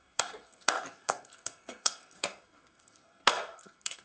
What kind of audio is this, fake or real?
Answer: fake